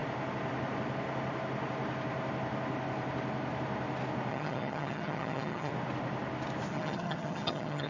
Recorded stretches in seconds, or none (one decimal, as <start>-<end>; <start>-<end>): 0.0-4.3; 5.7-6.7